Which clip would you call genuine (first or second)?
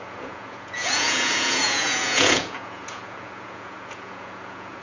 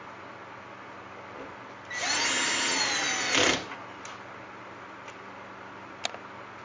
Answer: second